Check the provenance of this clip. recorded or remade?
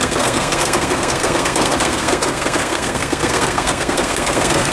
remade